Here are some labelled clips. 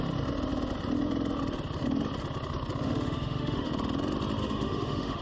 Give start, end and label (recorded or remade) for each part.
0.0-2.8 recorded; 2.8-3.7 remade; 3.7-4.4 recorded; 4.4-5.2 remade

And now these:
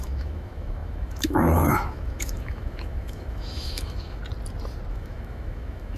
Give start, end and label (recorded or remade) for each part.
0.0-4.2 remade; 4.2-4.9 recorded; 4.9-6.0 remade

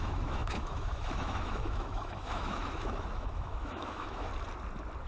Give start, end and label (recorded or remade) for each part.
0.0-4.3 remade; 4.3-5.1 recorded

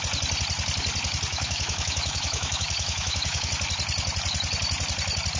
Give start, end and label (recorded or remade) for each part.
0.0-1.3 recorded; 1.3-3.5 remade; 3.5-5.4 recorded

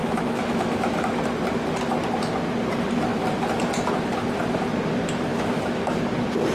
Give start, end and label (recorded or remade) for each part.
0.0-1.2 remade; 1.2-5.3 recorded; 5.3-5.9 remade; 5.9-6.5 recorded

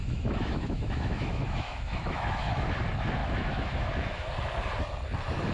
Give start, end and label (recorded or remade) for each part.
0.0-2.6 remade; 2.6-3.2 recorded; 3.2-4.3 remade; 4.3-5.5 recorded

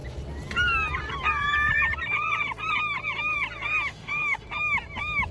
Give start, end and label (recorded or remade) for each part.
0.0-3.9 recorded; 3.9-4.5 remade; 4.5-5.3 recorded